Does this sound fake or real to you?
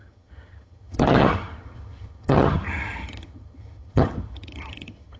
fake